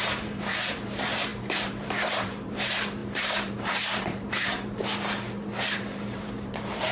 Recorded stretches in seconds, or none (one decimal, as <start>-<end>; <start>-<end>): 4.8-5.8

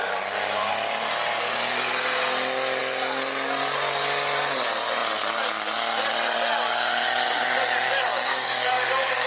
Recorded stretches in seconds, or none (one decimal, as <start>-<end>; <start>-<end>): 0.0-8.1; 8.7-9.3